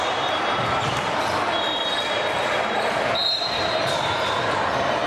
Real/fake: fake